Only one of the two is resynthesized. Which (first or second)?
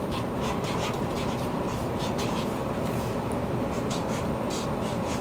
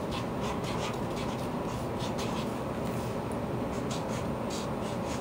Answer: first